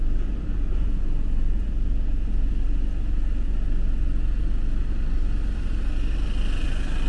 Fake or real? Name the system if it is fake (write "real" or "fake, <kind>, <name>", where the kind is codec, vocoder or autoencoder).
real